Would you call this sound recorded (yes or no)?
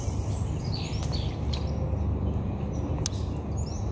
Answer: yes